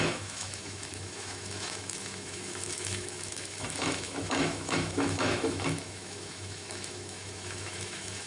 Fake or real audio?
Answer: fake